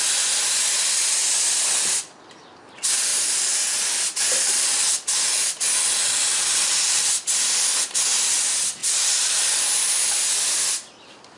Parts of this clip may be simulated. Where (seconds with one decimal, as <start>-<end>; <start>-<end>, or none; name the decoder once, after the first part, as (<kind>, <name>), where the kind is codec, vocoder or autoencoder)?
none